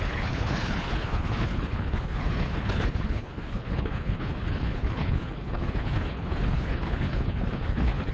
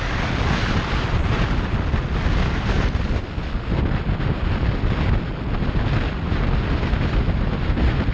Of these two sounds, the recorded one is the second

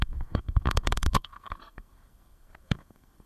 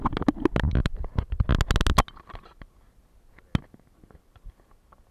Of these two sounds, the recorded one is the second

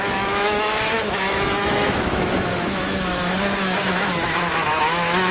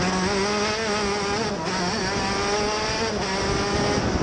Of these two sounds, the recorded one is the second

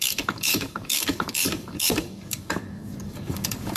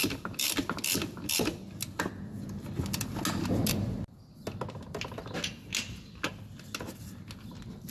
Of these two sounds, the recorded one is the second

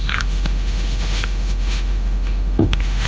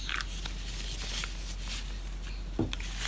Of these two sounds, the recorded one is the second